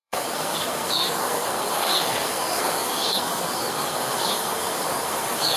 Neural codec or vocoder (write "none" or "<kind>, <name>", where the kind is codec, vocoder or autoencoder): codec, SNAC